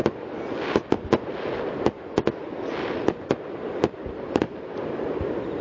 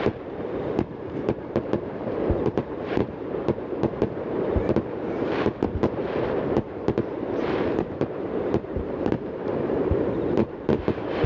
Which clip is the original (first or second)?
first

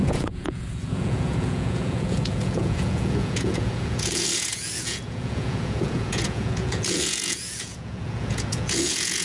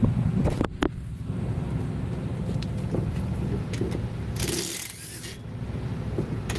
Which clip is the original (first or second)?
second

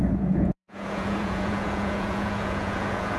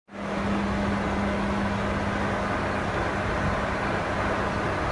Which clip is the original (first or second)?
second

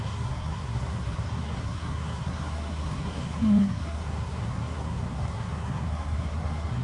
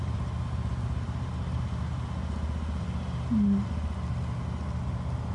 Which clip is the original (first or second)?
second